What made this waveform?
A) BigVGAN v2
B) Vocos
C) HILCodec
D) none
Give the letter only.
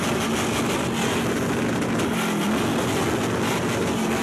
D